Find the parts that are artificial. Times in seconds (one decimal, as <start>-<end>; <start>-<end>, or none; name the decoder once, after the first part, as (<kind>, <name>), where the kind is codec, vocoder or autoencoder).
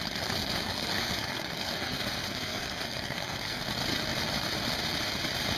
0.4-3.6 (codec, SNAC)